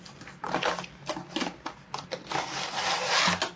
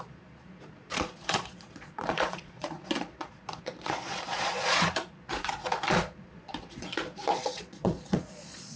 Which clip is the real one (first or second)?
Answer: first